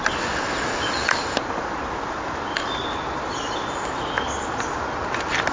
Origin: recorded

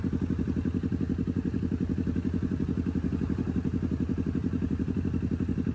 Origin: recorded